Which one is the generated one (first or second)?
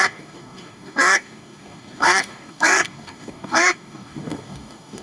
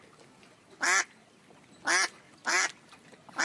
first